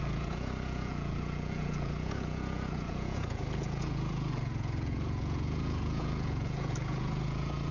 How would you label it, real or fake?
fake